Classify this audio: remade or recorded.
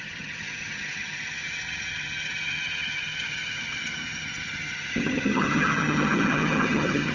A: remade